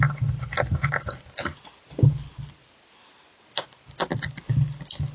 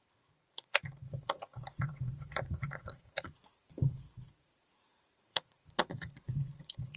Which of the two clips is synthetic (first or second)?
second